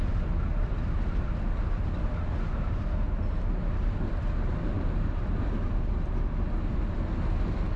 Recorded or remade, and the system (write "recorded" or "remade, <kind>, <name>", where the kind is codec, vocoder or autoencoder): recorded